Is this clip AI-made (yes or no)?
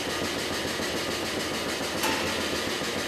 no